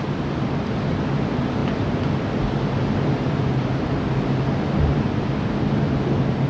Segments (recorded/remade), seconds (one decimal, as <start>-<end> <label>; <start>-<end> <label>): 0.0-6.5 recorded